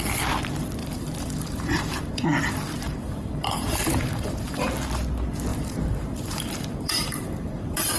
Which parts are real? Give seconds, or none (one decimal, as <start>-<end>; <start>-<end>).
0.0-0.8; 4.7-5.5